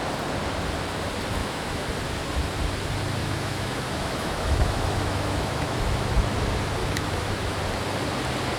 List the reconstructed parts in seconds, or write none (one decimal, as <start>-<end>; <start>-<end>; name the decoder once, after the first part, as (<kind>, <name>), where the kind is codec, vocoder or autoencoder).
1.4-1.9 (autoencoder, DAC-VAE); 3.2-6.2; 6.8-7.6